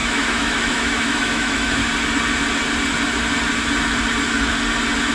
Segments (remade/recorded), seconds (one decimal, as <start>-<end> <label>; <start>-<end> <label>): 0.0-1.8 remade; 1.8-5.1 recorded